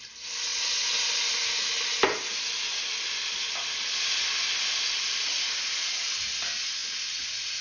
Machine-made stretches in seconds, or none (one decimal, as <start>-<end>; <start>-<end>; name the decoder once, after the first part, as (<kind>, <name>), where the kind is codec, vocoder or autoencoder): none